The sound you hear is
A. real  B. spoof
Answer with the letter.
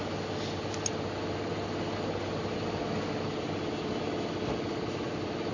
A